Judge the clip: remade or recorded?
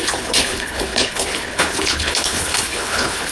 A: remade